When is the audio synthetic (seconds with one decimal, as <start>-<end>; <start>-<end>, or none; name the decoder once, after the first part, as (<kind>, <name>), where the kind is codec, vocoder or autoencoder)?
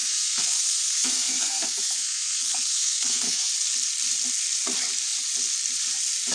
0.0-3.5 (codec, SNAC)